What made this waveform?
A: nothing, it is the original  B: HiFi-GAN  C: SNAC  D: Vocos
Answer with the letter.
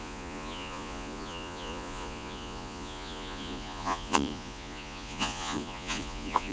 D